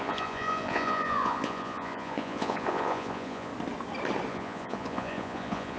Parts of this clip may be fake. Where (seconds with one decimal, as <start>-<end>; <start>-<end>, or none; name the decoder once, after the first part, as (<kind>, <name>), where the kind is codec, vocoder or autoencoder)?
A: 0.0-3.5 (vocoder, Vocos); 4.3-5.8